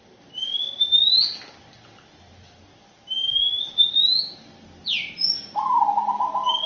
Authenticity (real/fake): real